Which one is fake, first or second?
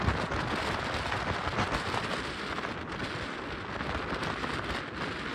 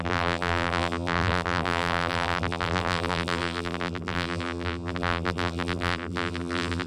second